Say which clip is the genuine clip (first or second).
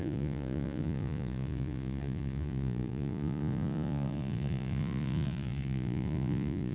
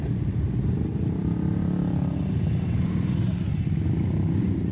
second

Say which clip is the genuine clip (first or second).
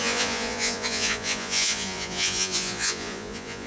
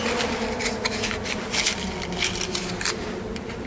second